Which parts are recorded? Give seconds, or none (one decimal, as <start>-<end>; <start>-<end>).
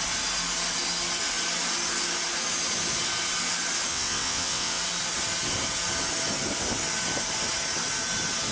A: 0.0-3.9; 4.8-8.5